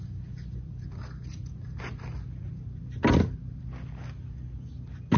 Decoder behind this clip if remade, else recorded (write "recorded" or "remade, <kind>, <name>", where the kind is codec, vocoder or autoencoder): recorded